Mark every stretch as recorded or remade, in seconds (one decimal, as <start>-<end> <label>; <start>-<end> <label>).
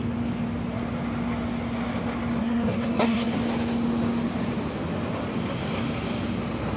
0.0-2.4 recorded; 2.4-3.4 remade; 3.4-6.8 recorded